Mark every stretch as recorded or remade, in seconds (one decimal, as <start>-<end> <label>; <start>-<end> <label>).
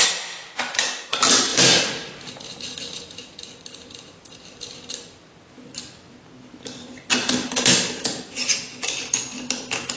0.0-10.0 recorded